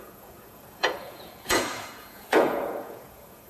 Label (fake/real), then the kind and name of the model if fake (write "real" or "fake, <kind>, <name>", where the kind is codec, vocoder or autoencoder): fake, vocoder, Vocos